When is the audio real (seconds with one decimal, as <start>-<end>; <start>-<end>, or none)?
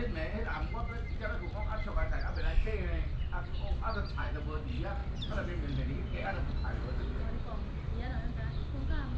0.0-9.2